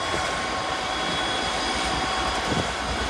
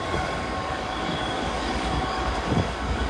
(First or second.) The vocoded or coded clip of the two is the second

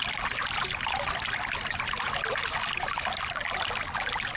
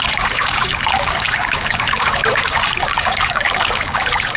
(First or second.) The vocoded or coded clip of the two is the second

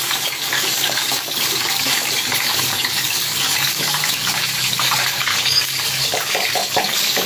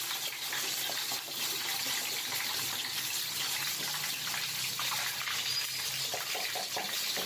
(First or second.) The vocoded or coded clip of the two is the first